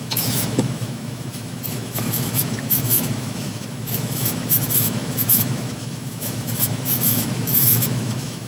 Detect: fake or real fake